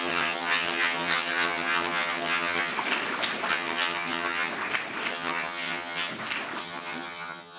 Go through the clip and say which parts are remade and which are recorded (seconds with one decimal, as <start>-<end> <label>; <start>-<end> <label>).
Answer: 0.0-2.7 remade; 2.7-3.5 recorded; 3.5-4.5 remade; 4.5-5.1 recorded; 5.1-6.1 remade; 6.1-6.6 recorded; 6.6-7.6 remade